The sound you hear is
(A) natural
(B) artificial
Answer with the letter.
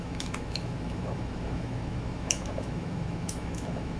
B